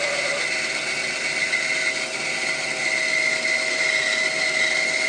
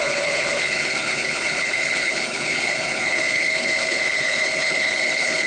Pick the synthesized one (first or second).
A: second